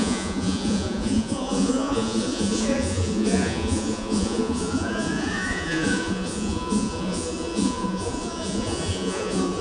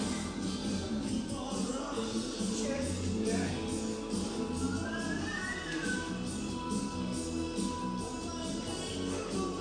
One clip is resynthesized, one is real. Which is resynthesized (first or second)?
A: first